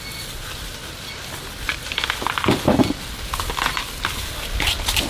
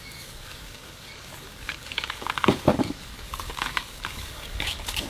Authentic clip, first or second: first